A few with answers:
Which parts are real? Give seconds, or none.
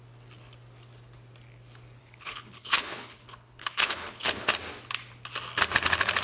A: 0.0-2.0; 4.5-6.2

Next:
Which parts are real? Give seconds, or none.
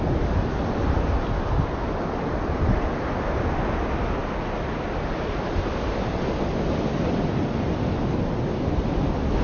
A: 0.0-9.4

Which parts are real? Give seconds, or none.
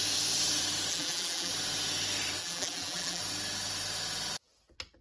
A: 0.0-0.9; 1.5-2.4; 3.2-5.0